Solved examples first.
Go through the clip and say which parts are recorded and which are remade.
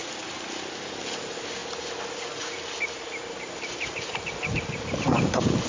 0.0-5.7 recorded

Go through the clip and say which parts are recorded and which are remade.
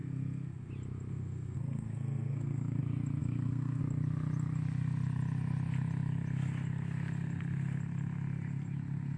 0.0-0.7 remade; 0.7-1.1 recorded; 1.1-2.8 remade; 2.8-3.2 recorded; 3.2-3.8 remade; 3.8-9.2 recorded